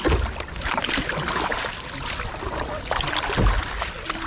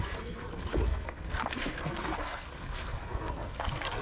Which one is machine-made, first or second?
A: second